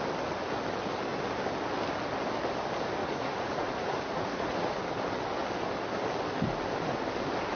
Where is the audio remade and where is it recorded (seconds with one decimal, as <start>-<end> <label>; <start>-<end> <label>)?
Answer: 0.0-3.0 recorded; 3.0-4.8 remade; 4.8-7.6 recorded